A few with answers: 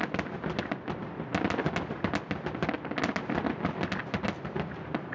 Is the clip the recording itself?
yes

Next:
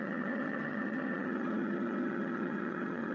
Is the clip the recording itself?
no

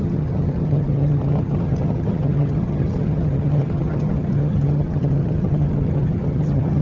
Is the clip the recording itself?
no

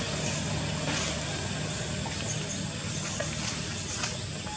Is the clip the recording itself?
yes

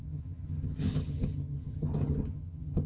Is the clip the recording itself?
no